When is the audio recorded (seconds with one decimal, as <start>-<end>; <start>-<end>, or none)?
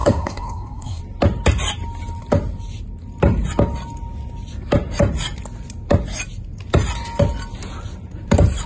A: 1.0-8.7